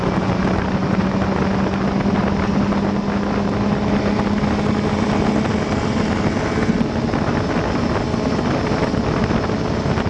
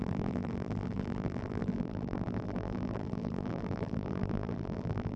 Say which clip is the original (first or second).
first